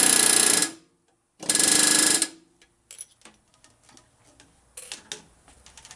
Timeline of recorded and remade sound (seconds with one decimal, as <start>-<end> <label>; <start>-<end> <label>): 0.0-6.0 recorded